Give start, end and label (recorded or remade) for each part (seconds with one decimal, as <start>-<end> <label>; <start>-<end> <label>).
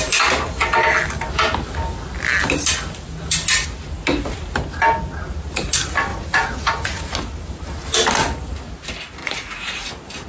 0.0-6.1 recorded; 6.1-7.0 remade; 7.0-9.2 recorded; 9.2-9.9 remade; 9.9-10.3 recorded